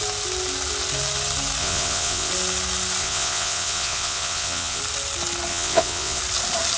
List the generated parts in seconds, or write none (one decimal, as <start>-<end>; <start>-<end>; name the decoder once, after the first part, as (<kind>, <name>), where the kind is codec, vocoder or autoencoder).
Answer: 1.6-2.3 (vocoder, WaveNeXt); 3.0-4.8; 5.5-6.2